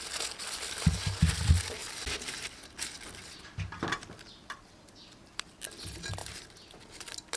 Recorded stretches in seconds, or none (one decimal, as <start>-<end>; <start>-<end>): 0.0-7.4